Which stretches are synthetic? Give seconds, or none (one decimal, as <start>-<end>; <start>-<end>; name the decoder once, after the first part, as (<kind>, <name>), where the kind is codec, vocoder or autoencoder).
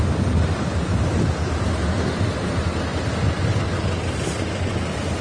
none